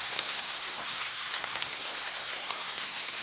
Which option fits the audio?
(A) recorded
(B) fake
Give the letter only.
B